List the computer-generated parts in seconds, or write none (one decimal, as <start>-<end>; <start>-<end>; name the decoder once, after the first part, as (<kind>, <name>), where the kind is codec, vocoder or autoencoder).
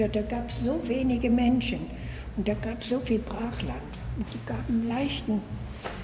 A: 2.6-4.9 (codec, DAC)